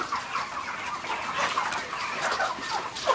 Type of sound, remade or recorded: recorded